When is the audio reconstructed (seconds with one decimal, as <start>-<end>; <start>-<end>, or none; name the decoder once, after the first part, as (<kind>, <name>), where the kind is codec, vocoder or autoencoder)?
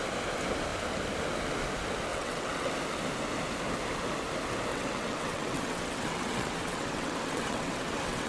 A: 2.1-2.7 (vocoder, WaveNeXt); 4.7-8.3